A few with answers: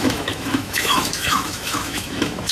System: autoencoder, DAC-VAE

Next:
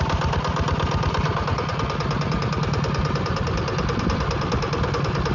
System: none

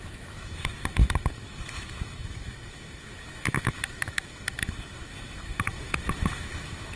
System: autoencoder, DAC-VAE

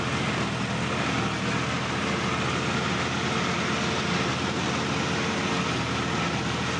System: none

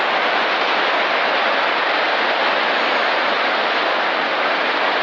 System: none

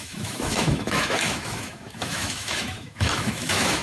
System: autoencoder, DAC-VAE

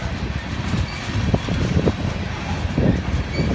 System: none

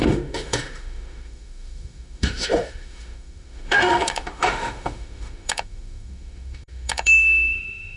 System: autoencoder, DAC-VAE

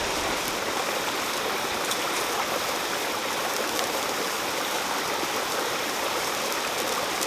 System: none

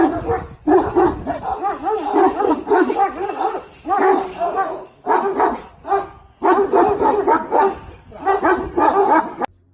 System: none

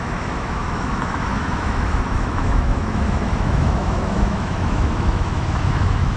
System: autoencoder, DAC-VAE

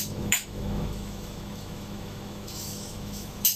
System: autoencoder, DAC-VAE